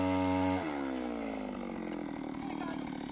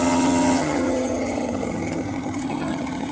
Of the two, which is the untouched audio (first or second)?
first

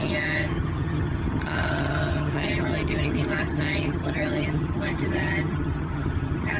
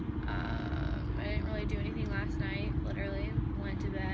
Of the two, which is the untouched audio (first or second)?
second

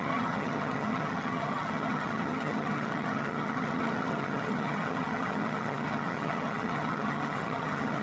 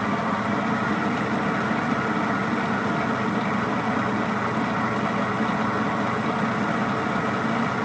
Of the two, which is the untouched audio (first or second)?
second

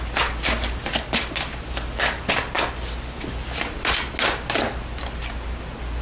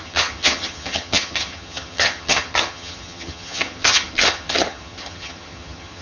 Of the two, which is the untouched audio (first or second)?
first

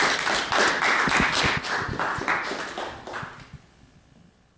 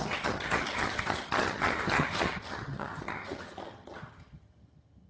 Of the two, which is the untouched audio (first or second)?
first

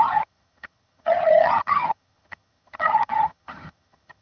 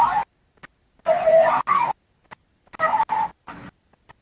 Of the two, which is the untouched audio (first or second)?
second